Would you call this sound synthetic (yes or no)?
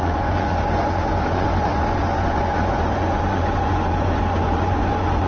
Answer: yes